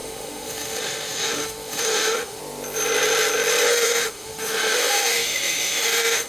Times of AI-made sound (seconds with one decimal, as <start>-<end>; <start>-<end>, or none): 0.0-2.4; 3.7-6.3